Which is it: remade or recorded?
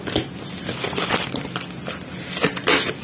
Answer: recorded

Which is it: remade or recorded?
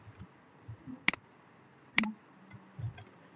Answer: recorded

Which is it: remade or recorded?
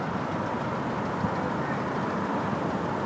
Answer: recorded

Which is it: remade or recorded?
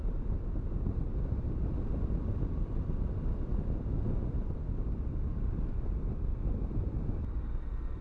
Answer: recorded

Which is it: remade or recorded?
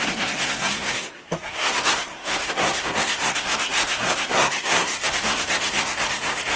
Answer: remade